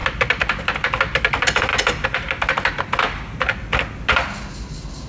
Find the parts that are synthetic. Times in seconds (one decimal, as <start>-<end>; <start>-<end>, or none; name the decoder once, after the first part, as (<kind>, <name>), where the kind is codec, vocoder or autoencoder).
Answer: none